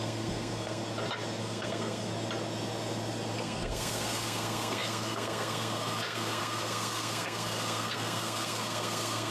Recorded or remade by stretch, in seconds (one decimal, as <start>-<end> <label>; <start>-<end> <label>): 0.0-0.8 remade; 0.8-1.4 recorded; 1.4-2.1 remade; 2.1-3.4 recorded; 3.4-9.3 remade